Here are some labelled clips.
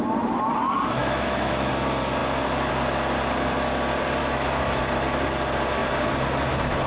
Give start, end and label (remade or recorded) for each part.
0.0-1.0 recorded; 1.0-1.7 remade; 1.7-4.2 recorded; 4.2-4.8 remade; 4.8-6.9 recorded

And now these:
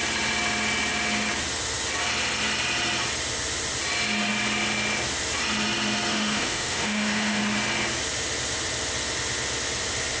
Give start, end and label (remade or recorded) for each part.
0.0-6.1 recorded; 6.1-7.4 remade; 7.4-10.2 recorded

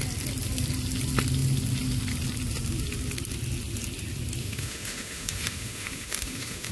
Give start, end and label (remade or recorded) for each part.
0.0-4.4 recorded; 4.4-6.7 remade

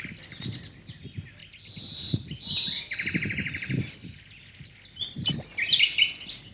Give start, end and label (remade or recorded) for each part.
0.0-6.5 recorded

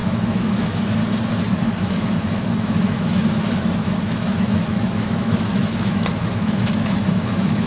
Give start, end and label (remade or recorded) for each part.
0.0-1.0 remade; 1.0-1.8 recorded; 1.8-7.7 remade

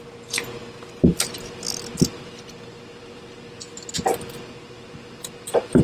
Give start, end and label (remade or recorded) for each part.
0.0-5.8 recorded

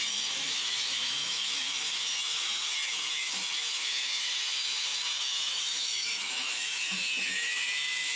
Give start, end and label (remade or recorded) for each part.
0.0-8.2 remade

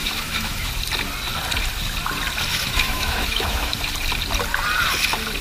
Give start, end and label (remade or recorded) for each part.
0.0-0.7 remade; 0.7-2.5 recorded; 2.5-3.8 remade; 3.8-5.4 recorded